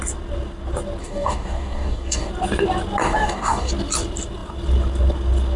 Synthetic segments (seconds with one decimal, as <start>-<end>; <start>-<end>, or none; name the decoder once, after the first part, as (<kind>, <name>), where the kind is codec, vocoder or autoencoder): 1.0-2.3 (codec, DAC); 3.0-3.7